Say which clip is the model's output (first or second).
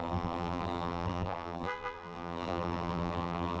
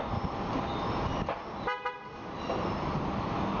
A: first